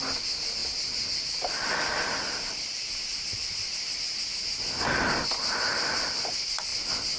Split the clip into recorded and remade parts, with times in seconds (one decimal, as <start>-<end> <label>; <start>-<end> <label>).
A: 0.0-7.2 recorded